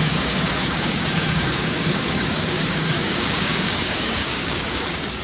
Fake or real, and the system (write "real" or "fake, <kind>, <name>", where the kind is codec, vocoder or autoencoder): fake, codec, DAC